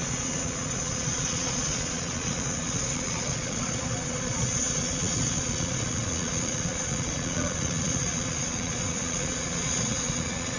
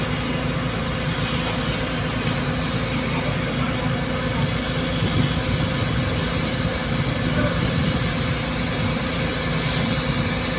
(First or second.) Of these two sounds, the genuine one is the second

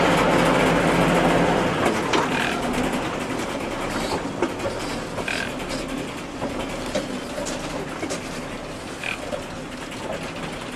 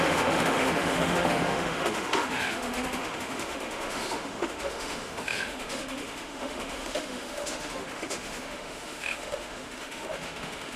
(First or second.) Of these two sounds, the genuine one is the first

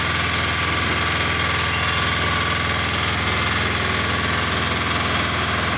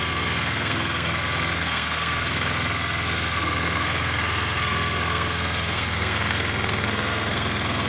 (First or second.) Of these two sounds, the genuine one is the first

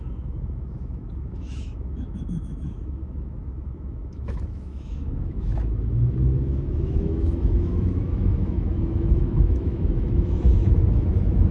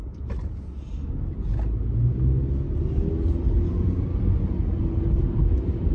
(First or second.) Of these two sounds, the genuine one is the second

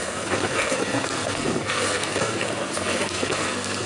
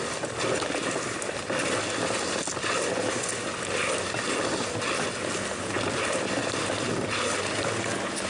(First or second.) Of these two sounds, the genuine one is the second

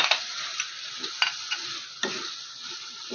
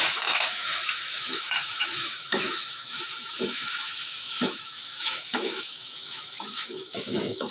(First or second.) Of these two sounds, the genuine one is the first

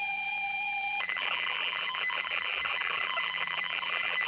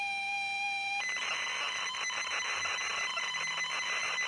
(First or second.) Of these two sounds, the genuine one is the second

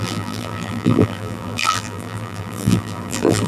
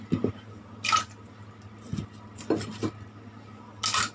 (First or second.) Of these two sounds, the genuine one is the second